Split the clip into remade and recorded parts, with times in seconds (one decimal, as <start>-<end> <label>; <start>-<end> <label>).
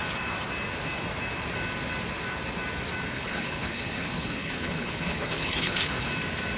0.0-3.1 recorded; 3.1-6.1 remade; 6.1-6.6 recorded